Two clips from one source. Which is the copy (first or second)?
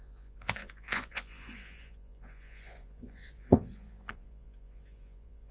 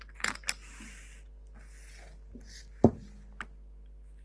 first